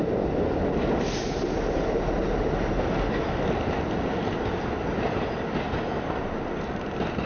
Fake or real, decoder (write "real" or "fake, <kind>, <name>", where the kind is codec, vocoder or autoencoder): real